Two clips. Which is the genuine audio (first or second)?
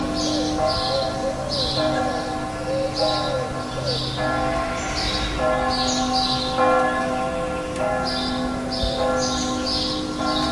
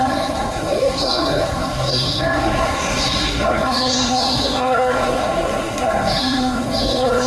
first